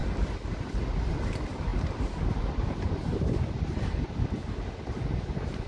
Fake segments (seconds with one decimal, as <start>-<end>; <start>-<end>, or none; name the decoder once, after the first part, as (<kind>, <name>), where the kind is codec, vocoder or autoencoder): none